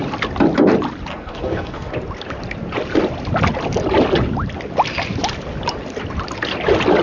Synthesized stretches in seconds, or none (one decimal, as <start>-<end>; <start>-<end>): 1.1-1.9